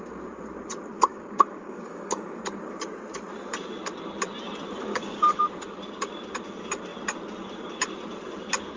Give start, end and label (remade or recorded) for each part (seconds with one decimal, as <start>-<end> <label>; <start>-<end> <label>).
0.0-1.1 recorded; 1.1-2.4 remade; 2.4-4.9 recorded; 4.9-5.4 remade; 5.4-8.8 recorded